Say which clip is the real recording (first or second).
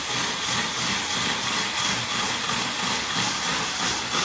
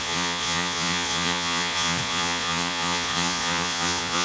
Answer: first